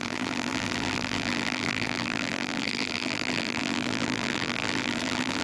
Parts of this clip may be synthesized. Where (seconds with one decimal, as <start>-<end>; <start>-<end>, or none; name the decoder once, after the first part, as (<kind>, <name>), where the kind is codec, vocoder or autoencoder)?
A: 0.0-5.4 (vocoder, BigVGAN v2)